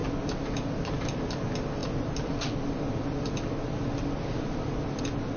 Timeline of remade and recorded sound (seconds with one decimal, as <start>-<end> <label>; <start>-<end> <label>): 0.0-5.4 recorded